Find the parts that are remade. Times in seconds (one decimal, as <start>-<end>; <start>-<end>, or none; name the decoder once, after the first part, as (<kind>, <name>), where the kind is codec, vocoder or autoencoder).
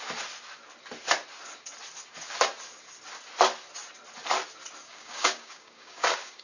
4.8-6.4 (codec, DAC)